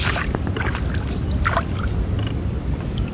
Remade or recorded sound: remade